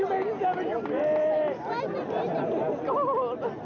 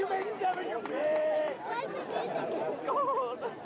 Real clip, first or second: first